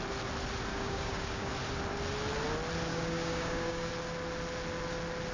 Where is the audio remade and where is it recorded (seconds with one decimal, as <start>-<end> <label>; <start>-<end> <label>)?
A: 0.0-0.7 recorded; 0.7-1.5 remade; 1.5-2.9 recorded; 2.9-3.9 remade; 3.9-5.3 recorded